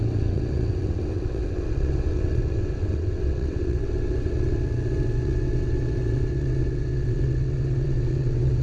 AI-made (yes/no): yes